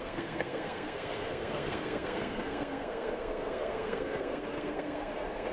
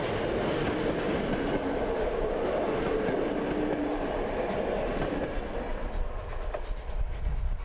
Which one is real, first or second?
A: second